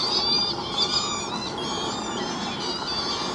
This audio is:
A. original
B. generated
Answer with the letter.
A